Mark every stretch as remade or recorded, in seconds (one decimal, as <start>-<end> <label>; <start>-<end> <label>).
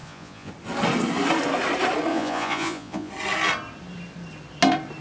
0.0-0.5 remade; 0.5-2.1 recorded; 2.1-3.1 remade; 3.1-5.0 recorded